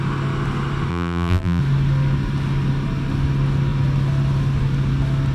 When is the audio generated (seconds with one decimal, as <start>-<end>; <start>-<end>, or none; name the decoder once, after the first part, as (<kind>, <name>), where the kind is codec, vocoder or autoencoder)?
0.9-1.6 (vocoder, BigVGAN v2)